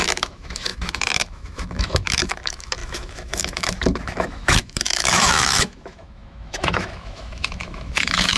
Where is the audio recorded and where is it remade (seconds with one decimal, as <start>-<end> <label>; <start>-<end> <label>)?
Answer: 0.0-8.4 remade